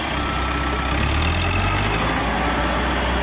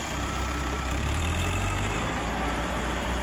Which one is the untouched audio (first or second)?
first